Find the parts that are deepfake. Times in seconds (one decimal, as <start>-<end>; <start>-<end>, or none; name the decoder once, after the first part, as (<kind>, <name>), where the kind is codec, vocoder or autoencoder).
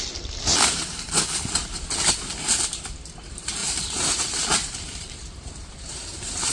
0.5-1.2 (vocoder, BigVGAN v2); 3.6-6.5